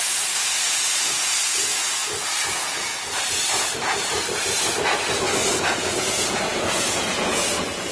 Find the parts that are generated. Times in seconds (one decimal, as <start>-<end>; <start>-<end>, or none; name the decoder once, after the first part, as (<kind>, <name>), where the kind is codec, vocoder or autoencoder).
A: 0.0-2.0 (vocoder, Vocos); 2.5-2.9; 5.6-7.9